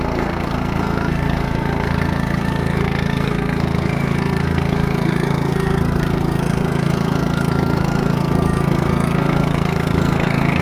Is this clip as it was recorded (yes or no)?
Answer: no